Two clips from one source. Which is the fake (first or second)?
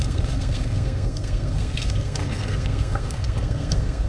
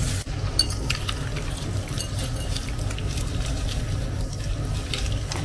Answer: first